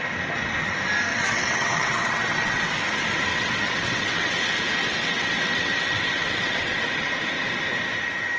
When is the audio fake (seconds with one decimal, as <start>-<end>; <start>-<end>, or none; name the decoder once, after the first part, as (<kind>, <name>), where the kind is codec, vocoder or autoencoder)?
1.1-2.7 (vocoder, WaveNeXt); 3.3-4.3; 4.8-7.1